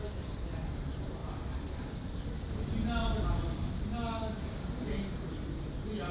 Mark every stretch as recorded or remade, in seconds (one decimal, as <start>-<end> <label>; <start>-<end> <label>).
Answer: 0.0-6.1 recorded